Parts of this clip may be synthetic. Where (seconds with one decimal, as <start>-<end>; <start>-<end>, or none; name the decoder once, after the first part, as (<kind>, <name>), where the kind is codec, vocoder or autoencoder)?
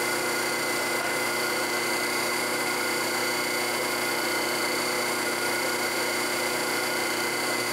0.0-3.2 (vocoder, BigVGAN v2); 3.8-7.7